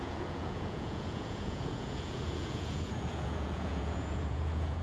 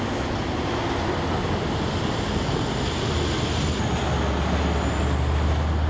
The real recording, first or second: second